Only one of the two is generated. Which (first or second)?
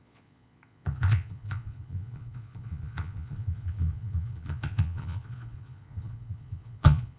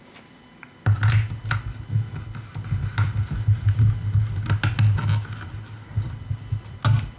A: first